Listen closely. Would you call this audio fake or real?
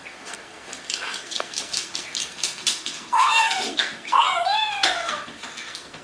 fake